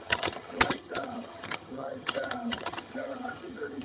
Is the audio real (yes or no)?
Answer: no